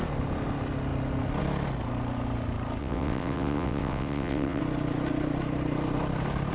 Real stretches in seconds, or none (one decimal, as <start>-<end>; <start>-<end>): 0.0-2.8; 4.6-6.5